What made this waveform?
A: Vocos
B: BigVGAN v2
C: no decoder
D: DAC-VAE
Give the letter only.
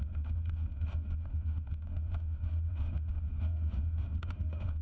D